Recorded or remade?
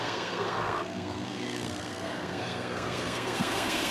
remade